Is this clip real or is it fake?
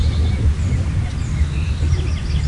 real